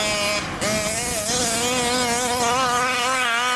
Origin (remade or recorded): recorded